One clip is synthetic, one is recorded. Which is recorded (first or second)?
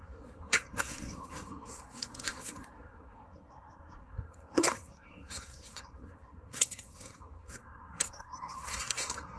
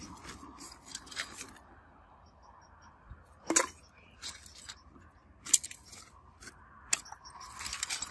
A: second